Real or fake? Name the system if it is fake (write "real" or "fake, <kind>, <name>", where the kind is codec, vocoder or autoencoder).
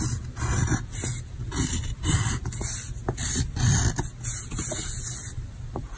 real